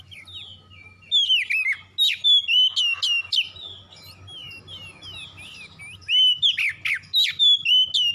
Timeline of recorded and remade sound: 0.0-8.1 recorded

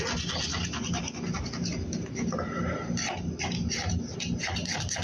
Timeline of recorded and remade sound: 0.0-5.0 recorded